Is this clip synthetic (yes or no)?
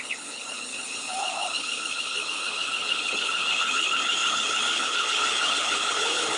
yes